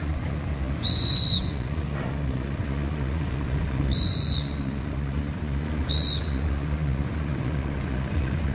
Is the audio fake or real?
fake